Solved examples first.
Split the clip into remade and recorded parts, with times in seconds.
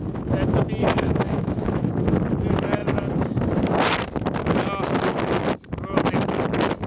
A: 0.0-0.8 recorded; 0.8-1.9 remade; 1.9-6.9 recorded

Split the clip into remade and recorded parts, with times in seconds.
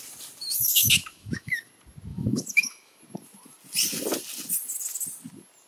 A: 0.0-0.4 recorded; 0.4-1.7 remade; 1.7-2.1 recorded; 2.1-3.0 remade; 3.0-5.7 recorded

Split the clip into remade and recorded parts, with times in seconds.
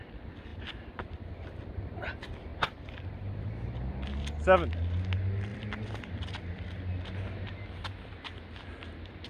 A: 0.0-0.5 recorded; 0.5-1.3 remade; 1.3-2.5 recorded; 2.5-3.9 remade; 3.9-5.5 recorded; 5.5-6.6 remade; 6.6-9.3 recorded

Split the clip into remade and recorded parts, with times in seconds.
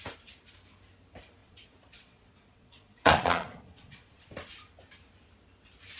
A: 0.0-1.4 recorded; 1.4-4.3 remade; 4.3-6.0 recorded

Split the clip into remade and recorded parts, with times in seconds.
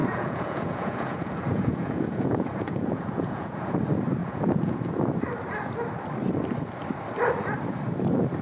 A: 0.0-3.8 remade; 3.8-4.2 recorded; 4.2-4.8 remade; 4.8-8.4 recorded